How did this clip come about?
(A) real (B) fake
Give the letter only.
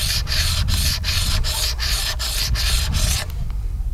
A